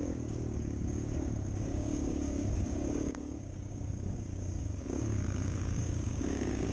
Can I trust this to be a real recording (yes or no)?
no